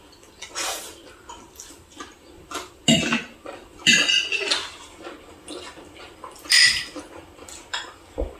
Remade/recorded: recorded